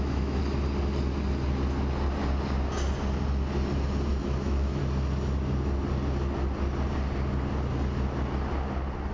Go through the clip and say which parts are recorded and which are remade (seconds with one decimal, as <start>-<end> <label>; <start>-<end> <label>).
0.0-0.4 remade; 0.4-4.2 recorded; 4.2-4.8 remade; 4.8-9.1 recorded